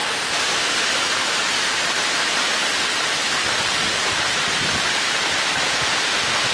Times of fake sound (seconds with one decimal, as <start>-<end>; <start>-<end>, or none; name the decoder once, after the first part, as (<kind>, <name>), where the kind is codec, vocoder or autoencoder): 0.0-0.6 (vocoder, BigVGAN v2); 4.0-5.3